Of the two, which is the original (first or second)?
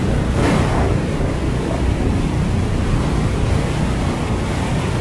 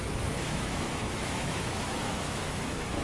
first